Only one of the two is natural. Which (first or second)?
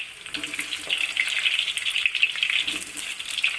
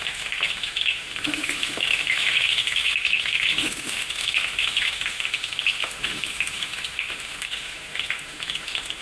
first